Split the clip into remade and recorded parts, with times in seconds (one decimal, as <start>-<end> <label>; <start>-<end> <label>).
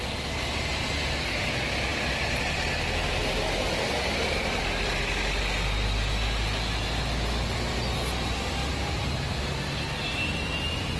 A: 0.0-8.6 recorded; 8.6-9.7 remade; 9.7-11.0 recorded